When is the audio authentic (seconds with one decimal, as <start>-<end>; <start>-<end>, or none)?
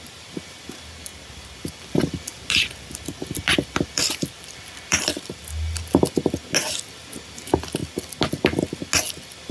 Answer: 0.0-1.1; 5.1-9.5